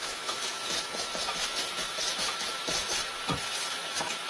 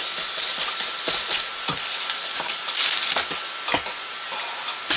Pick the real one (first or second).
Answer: second